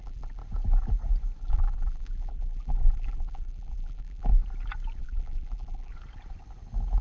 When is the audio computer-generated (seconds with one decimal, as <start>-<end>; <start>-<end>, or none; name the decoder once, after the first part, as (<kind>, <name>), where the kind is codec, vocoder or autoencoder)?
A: 0.0-0.4 (vocoder, BigVGAN v2); 1.4-4.3; 5.0-5.9